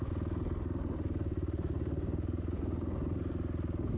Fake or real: real